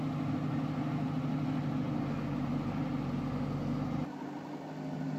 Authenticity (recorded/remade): recorded